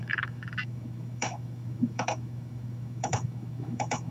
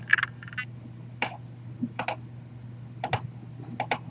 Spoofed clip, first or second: first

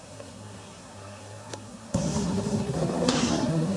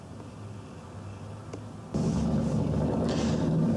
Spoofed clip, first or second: first